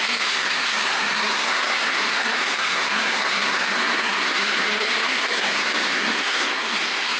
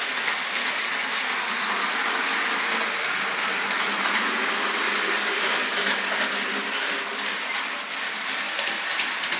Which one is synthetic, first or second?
first